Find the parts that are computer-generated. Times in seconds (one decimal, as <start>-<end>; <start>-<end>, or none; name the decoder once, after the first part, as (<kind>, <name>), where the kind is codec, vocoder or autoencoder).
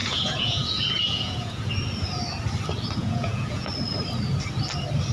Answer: 0.0-1.7 (vocoder, Vocos); 3.0-3.7